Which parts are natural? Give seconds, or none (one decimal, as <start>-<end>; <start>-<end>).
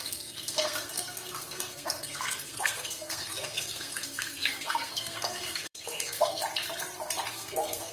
6.4-7.3